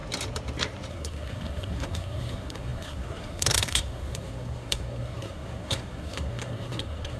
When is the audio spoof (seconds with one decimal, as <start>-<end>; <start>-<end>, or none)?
0.9-7.2